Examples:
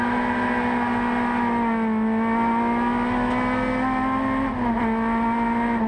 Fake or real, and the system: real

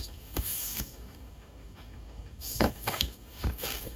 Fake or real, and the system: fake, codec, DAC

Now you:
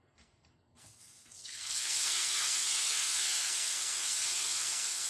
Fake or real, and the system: fake, codec, SNAC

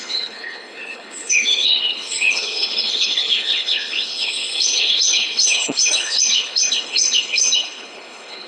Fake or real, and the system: fake, codec, HILCodec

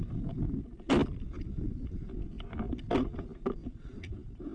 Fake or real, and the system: real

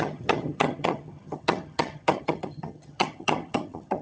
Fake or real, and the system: fake, vocoder, HiFi-GAN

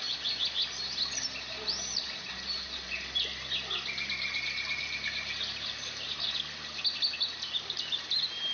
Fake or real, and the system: real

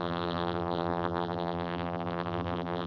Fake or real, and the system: fake, vocoder, BigVGAN v2